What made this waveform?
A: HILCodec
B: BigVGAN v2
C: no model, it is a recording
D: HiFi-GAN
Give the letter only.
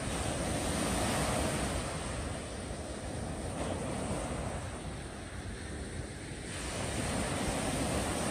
C